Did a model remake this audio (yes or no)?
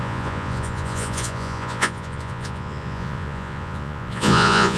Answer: yes